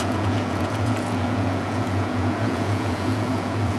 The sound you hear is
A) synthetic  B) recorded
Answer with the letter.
A